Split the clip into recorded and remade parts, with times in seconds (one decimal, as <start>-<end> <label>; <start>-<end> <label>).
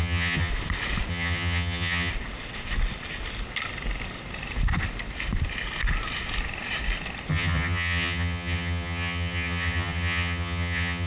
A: 0.0-0.5 remade; 0.5-1.1 recorded; 1.1-2.1 remade; 2.1-7.3 recorded; 7.3-11.1 remade